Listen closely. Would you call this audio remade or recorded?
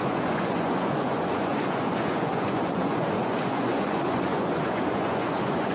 remade